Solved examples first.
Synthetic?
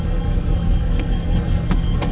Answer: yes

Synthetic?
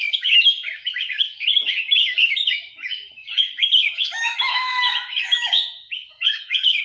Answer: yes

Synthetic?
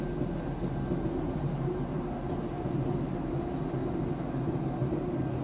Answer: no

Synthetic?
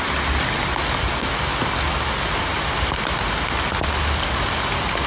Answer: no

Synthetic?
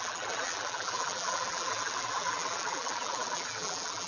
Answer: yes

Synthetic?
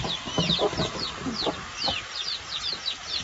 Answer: no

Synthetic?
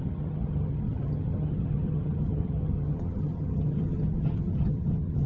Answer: yes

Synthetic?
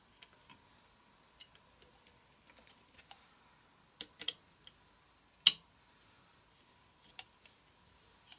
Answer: no